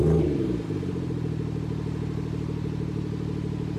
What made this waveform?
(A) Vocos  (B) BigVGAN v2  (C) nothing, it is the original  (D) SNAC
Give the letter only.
C